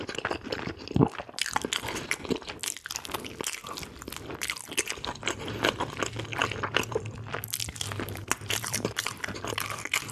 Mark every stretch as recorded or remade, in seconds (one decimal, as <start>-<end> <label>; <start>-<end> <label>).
0.0-3.6 recorded; 3.6-4.9 remade; 4.9-8.2 recorded; 8.2-9.6 remade; 9.6-10.1 recorded

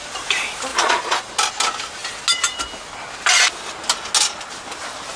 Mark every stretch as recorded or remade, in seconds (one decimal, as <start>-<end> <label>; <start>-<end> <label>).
0.0-0.7 recorded; 0.7-1.3 remade; 1.3-5.2 recorded

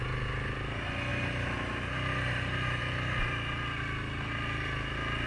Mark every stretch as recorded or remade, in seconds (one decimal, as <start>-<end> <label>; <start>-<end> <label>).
0.0-5.3 recorded

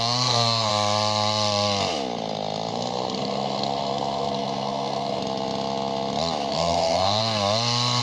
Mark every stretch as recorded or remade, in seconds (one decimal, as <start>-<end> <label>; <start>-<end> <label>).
0.0-0.7 remade; 0.7-2.7 recorded; 2.7-5.2 remade; 5.2-6.5 recorded; 6.5-7.2 remade; 7.2-8.0 recorded